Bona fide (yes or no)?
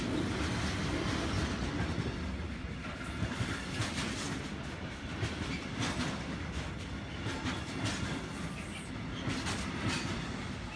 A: yes